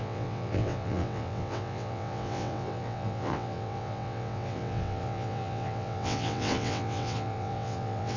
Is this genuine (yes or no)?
no